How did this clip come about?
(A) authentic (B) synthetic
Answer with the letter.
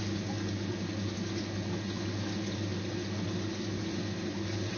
A